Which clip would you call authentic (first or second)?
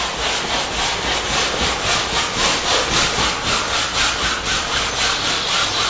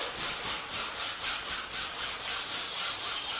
first